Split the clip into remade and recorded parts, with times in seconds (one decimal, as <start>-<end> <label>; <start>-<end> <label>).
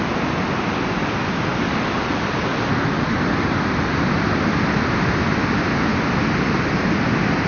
0.0-7.5 recorded